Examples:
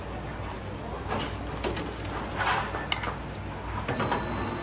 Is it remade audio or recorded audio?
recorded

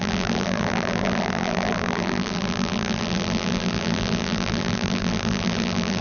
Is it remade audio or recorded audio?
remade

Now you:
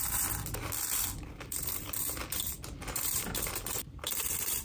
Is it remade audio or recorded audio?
remade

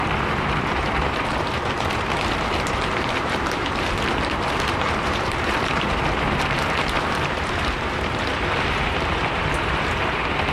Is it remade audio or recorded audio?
remade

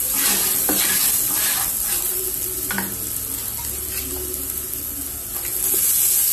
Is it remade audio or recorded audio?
recorded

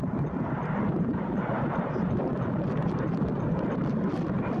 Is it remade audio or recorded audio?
recorded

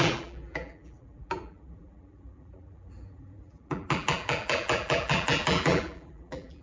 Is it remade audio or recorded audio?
remade